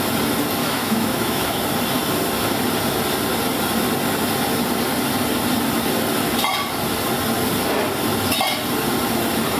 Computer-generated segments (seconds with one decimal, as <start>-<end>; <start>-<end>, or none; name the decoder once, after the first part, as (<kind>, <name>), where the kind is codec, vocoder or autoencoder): 0.6-1.6 (autoencoder, DAC-VAE)